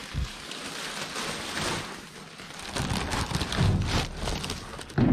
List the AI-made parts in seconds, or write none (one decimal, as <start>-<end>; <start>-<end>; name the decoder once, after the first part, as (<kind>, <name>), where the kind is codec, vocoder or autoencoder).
0.0-0.6 (codec, DAC)